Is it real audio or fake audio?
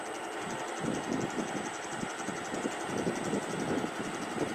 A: real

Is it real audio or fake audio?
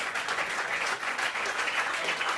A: fake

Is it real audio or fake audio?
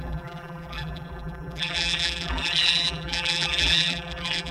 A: fake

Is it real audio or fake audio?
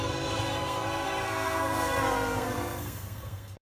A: fake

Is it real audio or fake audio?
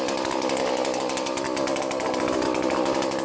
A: real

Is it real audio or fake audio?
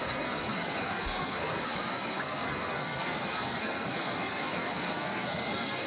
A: fake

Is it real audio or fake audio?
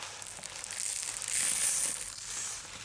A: real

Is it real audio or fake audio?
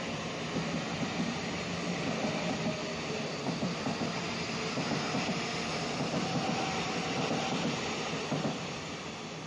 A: real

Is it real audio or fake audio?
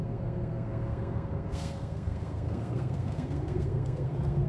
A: fake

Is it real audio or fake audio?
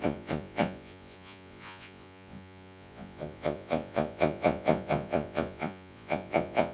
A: fake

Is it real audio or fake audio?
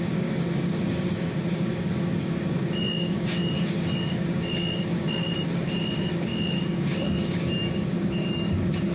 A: fake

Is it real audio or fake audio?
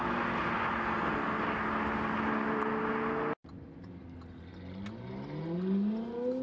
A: real